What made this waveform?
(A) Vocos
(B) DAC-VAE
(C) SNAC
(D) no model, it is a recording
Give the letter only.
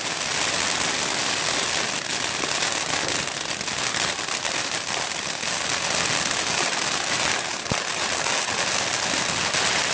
D